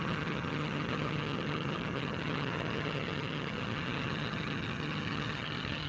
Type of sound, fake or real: fake